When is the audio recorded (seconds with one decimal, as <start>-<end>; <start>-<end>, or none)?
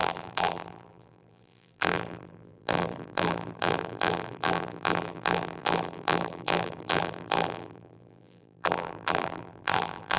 none